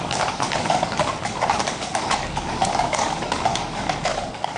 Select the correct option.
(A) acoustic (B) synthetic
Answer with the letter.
B